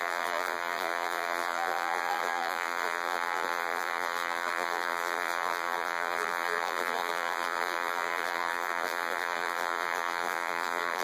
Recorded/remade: remade